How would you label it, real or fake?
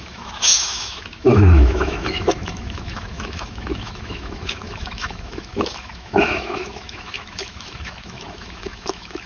fake